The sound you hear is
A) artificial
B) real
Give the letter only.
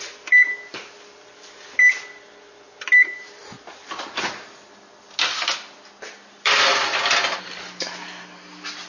B